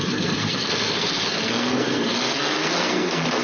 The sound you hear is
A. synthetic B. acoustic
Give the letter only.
A